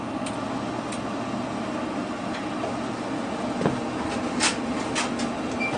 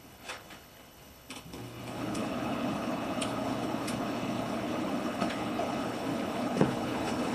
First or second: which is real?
first